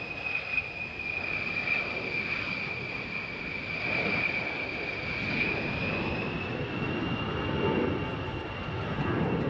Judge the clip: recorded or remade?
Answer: recorded